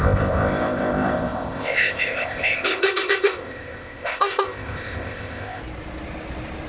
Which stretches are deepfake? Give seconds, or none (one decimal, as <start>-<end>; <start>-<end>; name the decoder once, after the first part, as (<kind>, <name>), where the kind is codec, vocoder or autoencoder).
0.0-5.6 (codec, ZipCodec)